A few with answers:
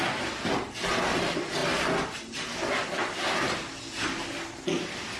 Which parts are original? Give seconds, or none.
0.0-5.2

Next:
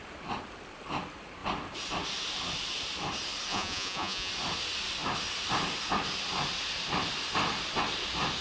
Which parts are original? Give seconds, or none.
0.0-3.5; 4.3-8.4